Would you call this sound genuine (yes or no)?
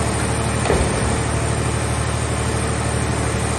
yes